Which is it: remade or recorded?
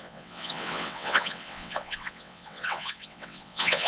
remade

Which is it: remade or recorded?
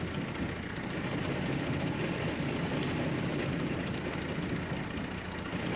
recorded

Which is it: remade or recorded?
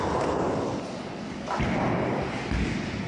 recorded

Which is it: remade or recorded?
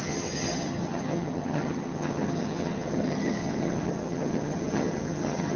remade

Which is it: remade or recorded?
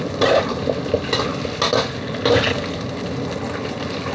recorded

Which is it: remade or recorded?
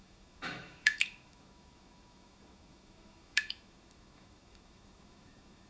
remade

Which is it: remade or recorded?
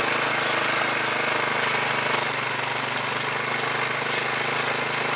recorded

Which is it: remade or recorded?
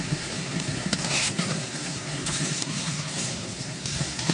remade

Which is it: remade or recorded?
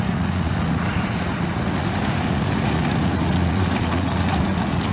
remade